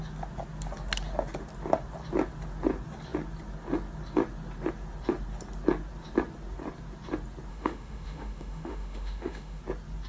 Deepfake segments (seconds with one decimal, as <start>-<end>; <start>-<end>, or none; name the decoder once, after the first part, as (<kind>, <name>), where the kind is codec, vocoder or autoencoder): 7.5-9.6 (autoencoder, DAC-VAE)